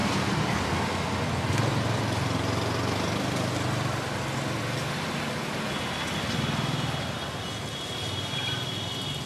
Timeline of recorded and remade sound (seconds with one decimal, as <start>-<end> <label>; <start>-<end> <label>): 0.0-9.3 recorded